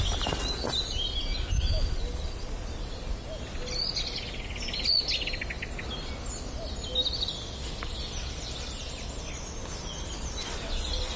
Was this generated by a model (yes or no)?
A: no